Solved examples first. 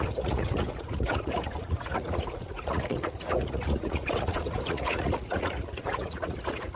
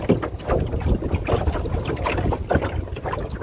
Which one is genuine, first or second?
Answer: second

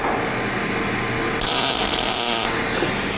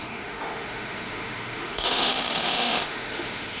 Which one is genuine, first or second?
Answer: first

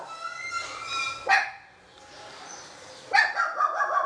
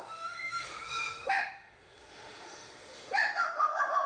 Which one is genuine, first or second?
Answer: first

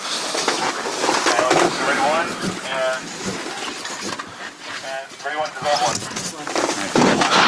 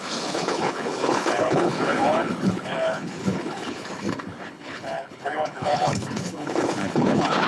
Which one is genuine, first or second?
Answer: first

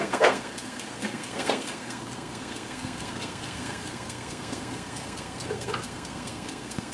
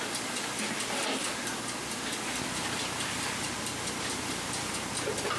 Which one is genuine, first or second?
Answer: second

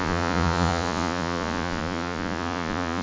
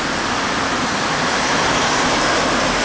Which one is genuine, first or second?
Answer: second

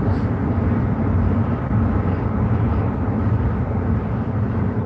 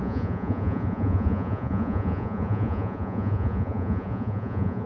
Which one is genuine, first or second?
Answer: first